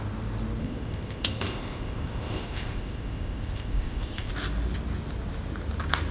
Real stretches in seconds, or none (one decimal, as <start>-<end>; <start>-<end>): 0.0-0.6; 4.3-6.1